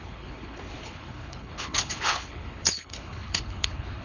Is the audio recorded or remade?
remade